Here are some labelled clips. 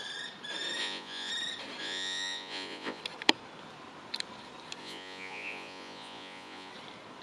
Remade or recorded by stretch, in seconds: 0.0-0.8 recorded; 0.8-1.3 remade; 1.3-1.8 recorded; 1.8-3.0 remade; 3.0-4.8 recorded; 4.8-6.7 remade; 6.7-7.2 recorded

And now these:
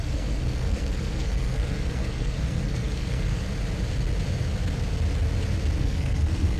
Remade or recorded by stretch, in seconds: 0.0-3.4 remade; 3.4-5.8 recorded; 5.8-6.6 remade

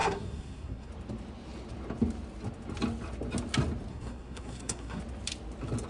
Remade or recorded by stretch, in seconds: 0.0-0.9 remade; 0.9-3.9 recorded; 3.9-5.0 remade; 5.0-5.9 recorded

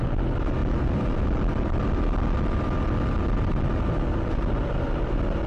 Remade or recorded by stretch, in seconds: 0.0-5.5 recorded

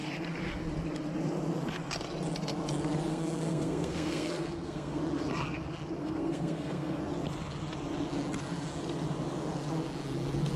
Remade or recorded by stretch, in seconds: 0.0-3.1 recorded; 3.1-5.0 remade; 5.0-6.0 recorded; 6.0-7.0 remade; 7.0-10.6 recorded